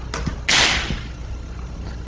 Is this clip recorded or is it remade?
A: recorded